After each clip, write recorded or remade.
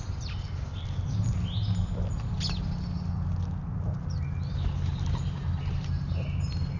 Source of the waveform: recorded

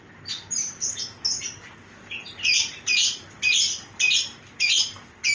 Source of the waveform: recorded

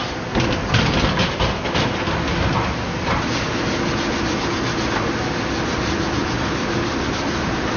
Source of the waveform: recorded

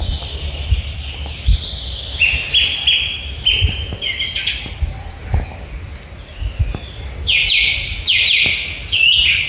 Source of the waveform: recorded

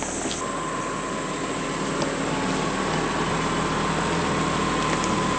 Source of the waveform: recorded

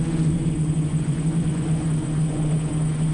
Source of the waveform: remade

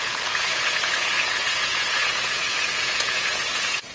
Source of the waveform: remade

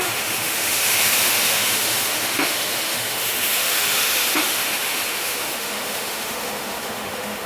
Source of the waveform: remade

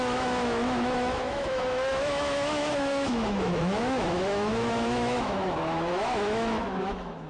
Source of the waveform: remade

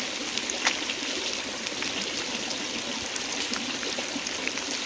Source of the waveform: recorded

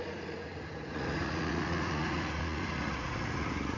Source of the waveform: remade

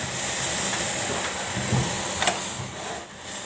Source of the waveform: recorded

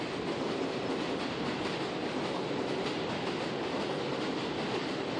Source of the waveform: recorded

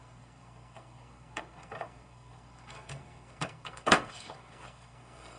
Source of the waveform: remade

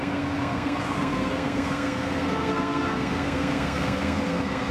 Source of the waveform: remade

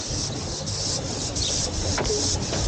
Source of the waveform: recorded